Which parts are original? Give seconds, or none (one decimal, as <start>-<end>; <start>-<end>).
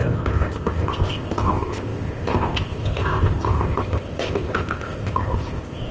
none